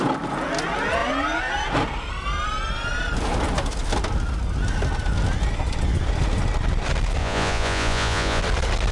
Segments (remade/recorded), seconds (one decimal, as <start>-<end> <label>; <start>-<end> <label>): 0.0-7.2 recorded; 7.2-8.4 remade; 8.4-8.9 recorded